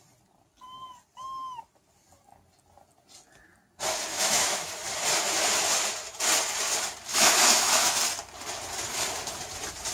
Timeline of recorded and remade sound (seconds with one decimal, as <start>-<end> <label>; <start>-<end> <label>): 0.0-4.1 recorded; 4.1-4.7 remade; 4.7-7.1 recorded; 7.1-8.0 remade; 8.0-9.9 recorded